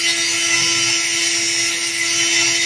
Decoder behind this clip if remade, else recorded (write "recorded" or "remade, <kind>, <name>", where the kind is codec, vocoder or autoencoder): recorded